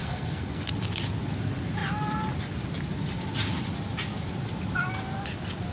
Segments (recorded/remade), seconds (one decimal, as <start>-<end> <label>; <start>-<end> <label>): 0.0-0.7 remade; 0.7-5.7 recorded